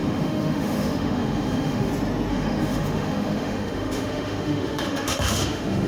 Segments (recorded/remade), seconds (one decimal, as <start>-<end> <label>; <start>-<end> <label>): 0.0-1.9 remade; 1.9-2.3 recorded; 2.3-5.9 remade